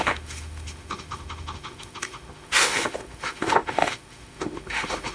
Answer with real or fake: fake